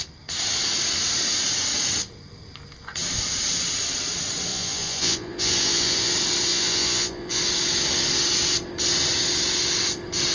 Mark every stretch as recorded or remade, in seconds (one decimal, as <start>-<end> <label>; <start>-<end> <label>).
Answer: 0.0-4.5 recorded; 4.5-6.1 remade; 6.1-6.5 recorded; 6.5-7.4 remade; 7.4-10.3 recorded